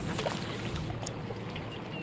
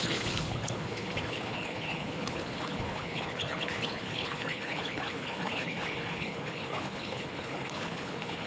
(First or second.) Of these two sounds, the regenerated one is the second